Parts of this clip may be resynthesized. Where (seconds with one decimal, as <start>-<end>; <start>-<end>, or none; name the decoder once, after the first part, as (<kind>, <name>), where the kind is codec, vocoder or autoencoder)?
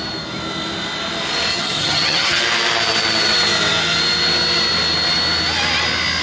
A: 1.5-2.4 (vocoder, HiFi-GAN)